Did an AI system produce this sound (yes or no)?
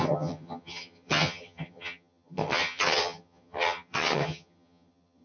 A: yes